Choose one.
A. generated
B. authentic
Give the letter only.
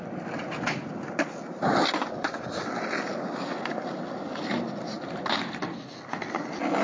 B